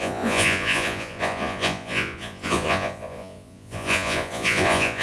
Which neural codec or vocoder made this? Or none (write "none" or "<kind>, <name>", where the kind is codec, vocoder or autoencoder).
vocoder, Vocos